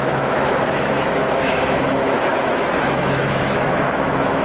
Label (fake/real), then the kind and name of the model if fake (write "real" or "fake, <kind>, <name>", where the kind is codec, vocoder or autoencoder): fake, autoencoder, DAC-VAE